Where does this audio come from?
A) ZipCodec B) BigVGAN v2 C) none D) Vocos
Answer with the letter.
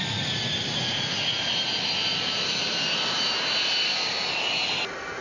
C